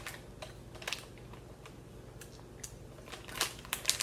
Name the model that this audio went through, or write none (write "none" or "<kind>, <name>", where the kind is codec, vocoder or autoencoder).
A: none